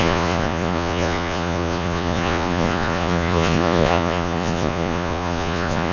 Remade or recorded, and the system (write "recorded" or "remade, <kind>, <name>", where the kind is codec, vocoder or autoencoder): remade, vocoder, Vocos